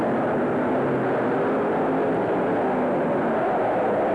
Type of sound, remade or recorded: recorded